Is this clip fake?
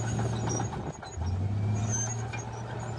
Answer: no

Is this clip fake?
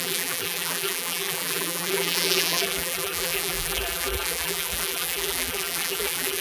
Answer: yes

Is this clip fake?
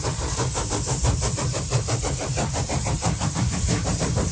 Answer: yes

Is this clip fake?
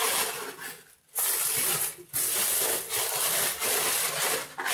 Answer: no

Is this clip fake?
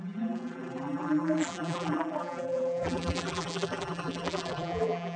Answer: yes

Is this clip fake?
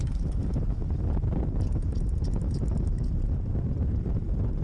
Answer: yes